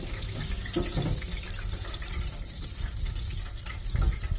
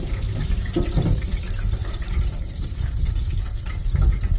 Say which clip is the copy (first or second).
second